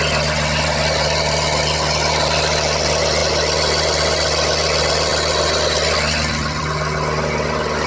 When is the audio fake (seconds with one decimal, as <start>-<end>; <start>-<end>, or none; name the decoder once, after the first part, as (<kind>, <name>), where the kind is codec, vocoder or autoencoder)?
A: 5.1-6.6 (vocoder, BigVGAN v2)

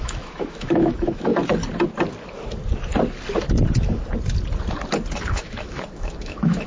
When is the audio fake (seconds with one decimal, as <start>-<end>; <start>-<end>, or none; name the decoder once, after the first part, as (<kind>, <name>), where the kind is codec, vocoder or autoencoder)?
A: 0.0-1.3 (autoencoder, DAC-VAE); 5.3-6.7

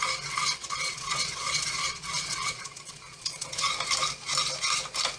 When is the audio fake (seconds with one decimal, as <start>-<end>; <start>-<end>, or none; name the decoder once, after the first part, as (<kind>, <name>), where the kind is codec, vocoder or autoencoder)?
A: 0.6-3.7 (vocoder, Vocos)

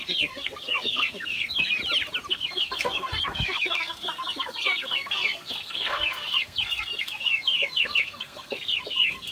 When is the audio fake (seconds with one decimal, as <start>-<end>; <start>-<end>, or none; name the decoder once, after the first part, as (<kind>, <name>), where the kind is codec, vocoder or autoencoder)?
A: 0.0-1.8 (codec, SNAC); 2.3-9.3

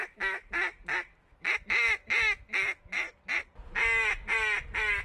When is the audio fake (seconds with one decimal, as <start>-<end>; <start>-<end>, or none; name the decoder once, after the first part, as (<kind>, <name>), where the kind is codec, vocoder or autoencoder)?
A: 0.0-0.4 (autoencoder, DAC-VAE); 1.2-2.9

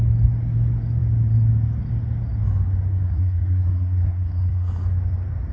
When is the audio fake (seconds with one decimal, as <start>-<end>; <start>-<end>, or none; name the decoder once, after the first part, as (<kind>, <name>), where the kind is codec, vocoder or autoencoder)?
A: 2.9-4.7 (codec, SNAC)

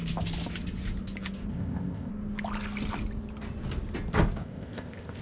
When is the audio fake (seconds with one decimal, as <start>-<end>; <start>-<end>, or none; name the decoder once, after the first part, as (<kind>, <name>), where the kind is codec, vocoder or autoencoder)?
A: 1.5-2.1 (codec, ZipCodec); 4.4-5.2